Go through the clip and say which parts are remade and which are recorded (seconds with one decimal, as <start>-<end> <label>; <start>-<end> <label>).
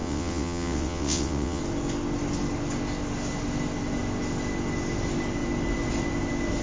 0.0-1.6 remade; 1.6-6.6 recorded